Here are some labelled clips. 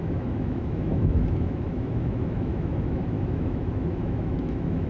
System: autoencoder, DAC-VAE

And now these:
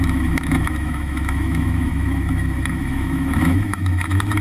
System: autoencoder, DAC-VAE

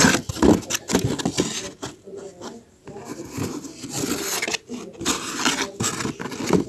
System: none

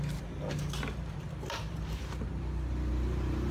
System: none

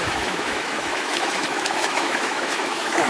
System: autoencoder, DAC-VAE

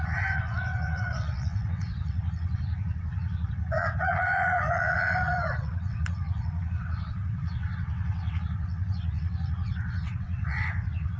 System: vocoder, WaveNeXt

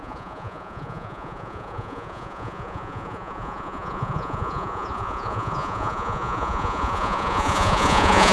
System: vocoder, Vocos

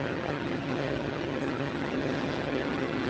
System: vocoder, HiFi-GAN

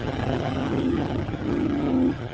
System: vocoder, HiFi-GAN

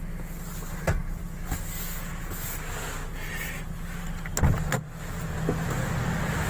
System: none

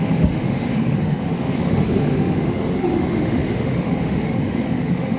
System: autoencoder, DAC-VAE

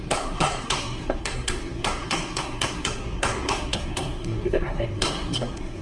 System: codec, SNAC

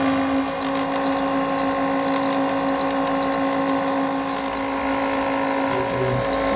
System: none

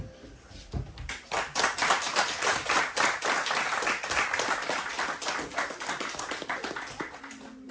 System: none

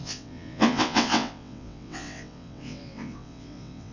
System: vocoder, WaveNeXt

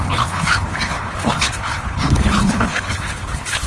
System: codec, HILCodec